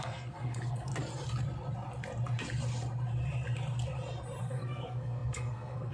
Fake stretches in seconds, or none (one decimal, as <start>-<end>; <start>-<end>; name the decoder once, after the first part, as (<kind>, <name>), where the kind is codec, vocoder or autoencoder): 0.0-0.9 (codec, SNAC); 4.4-5.9